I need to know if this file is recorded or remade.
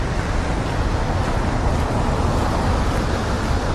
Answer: recorded